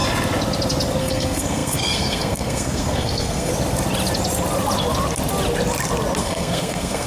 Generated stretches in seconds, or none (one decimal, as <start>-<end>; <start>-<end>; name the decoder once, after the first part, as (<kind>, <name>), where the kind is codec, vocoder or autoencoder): 1.0-3.5 (codec, SNAC); 6.2-7.1